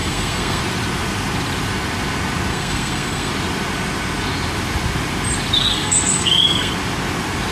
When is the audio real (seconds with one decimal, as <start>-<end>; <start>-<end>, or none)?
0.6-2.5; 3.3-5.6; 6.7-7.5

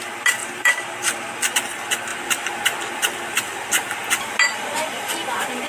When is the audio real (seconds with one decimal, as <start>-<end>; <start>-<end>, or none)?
0.0-0.4; 1.3-5.7

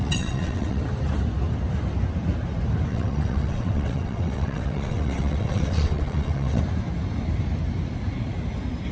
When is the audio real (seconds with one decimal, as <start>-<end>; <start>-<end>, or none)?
0.8-2.9; 6.6-8.9